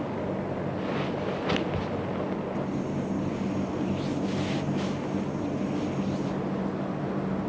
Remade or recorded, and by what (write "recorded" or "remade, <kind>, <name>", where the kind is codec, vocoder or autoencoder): recorded